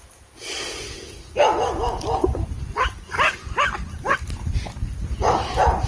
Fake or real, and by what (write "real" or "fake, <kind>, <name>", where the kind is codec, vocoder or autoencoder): real